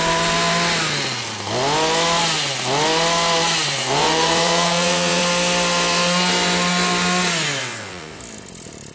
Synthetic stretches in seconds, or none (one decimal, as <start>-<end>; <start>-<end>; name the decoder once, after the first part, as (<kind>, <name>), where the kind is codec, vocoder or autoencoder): 3.8-5.2 (vocoder, WaveNeXt); 7.6-8.2